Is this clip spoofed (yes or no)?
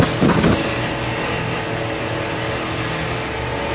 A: no